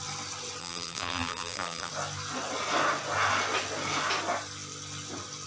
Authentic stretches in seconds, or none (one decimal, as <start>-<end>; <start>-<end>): 0.0-0.6; 1.9-5.5